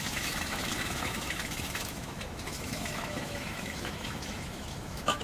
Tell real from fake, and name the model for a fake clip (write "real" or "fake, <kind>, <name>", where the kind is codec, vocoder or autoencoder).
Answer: fake, autoencoder, DAC-VAE